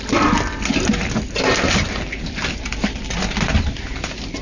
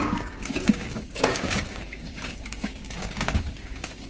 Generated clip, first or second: second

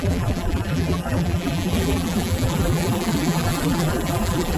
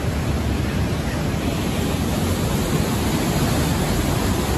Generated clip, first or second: first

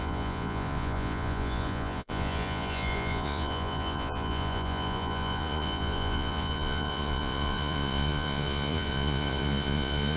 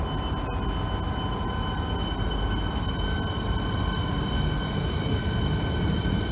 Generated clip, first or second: first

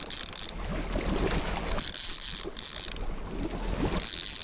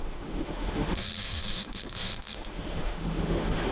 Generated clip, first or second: second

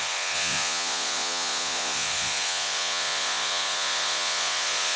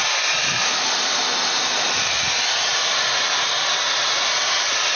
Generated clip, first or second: first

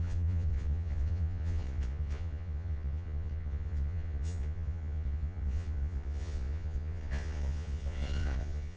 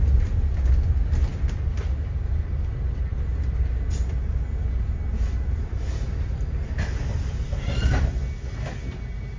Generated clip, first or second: first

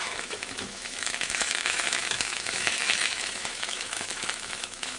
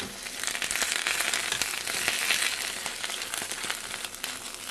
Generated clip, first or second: first